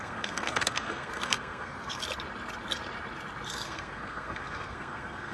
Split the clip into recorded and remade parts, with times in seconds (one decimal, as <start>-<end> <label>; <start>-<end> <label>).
0.0-2.0 remade; 2.0-3.5 recorded; 3.5-5.3 remade